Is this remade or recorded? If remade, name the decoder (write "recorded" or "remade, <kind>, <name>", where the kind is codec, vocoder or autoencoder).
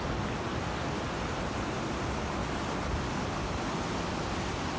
recorded